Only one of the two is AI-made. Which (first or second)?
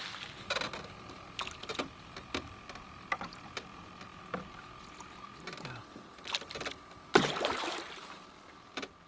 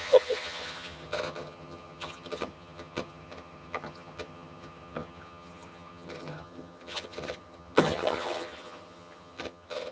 second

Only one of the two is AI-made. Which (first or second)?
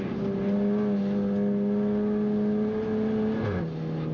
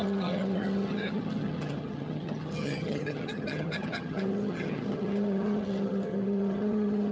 second